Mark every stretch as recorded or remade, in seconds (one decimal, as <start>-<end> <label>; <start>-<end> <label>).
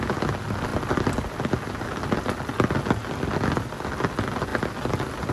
0.0-5.3 recorded